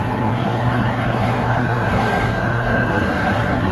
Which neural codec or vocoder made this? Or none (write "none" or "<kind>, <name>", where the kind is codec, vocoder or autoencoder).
codec, SNAC